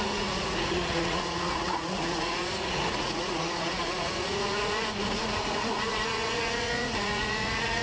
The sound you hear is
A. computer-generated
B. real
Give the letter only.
A